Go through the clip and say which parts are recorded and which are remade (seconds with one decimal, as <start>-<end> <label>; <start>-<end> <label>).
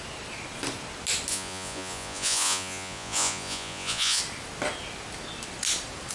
0.0-1.3 recorded; 1.3-4.2 remade; 4.2-6.1 recorded